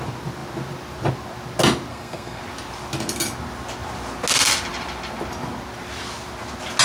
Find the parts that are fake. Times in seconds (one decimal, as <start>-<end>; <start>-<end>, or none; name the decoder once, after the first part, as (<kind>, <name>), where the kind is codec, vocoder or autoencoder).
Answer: 1.9-2.4 (codec, SNAC)